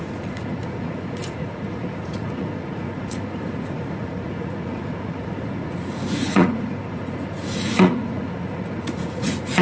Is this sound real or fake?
fake